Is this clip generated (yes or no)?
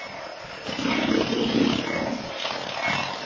no